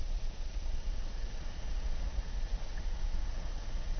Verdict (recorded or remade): remade